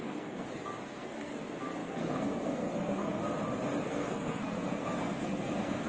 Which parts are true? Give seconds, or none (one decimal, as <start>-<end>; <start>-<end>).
3.2-3.8